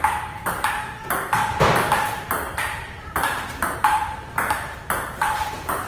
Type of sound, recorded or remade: remade